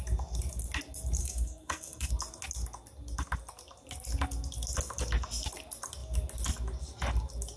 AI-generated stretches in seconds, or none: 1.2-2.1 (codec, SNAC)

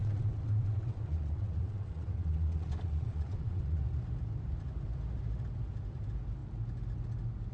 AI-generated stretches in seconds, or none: 0.0-3.8 (vocoder, WaveNeXt)

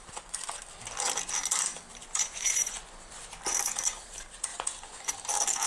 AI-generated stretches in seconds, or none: 2.0-3.2 (vocoder, Vocos); 4.5-5.1

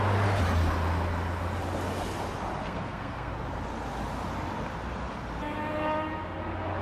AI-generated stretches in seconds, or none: 2.6-3.3 (codec, SNAC)